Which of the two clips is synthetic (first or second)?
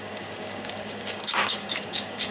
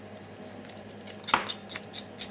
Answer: first